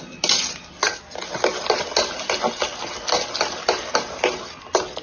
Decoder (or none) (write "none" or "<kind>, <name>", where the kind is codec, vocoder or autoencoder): none